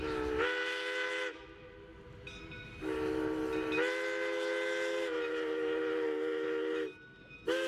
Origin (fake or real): real